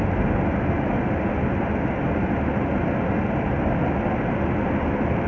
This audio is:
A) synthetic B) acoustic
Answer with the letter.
B